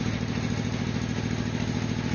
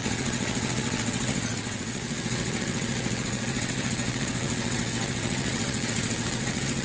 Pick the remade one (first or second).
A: second